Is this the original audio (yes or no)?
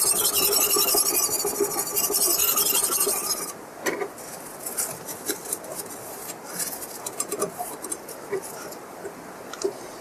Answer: no